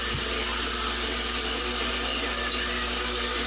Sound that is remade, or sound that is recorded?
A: recorded